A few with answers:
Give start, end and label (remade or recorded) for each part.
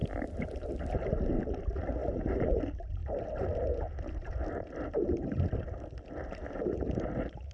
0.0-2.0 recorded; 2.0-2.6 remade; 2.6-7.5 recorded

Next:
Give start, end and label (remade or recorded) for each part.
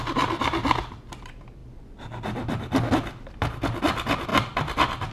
0.0-5.1 recorded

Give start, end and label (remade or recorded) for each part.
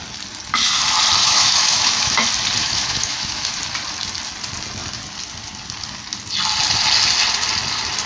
0.0-1.2 recorded; 1.2-2.1 remade; 2.1-2.6 recorded; 2.6-3.6 remade; 3.6-8.1 recorded